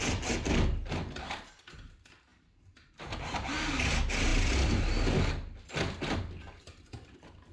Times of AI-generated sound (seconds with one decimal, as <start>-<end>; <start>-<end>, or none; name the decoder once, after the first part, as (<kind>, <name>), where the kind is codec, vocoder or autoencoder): 2.3-3.5 (vocoder, BigVGAN v2)